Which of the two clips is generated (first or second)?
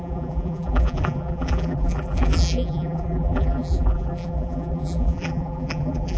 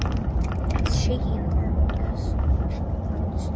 first